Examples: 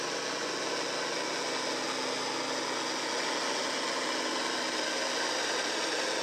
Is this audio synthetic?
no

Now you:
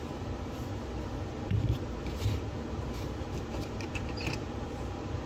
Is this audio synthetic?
yes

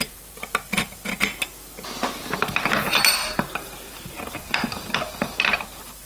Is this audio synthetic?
no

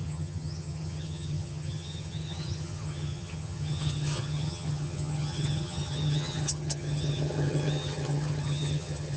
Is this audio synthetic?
yes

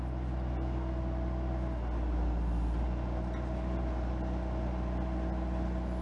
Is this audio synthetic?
no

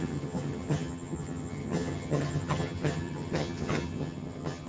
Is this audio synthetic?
yes